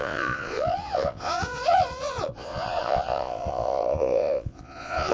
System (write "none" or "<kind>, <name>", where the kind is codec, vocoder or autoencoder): vocoder, Vocos